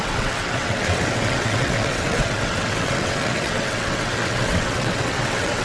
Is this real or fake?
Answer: fake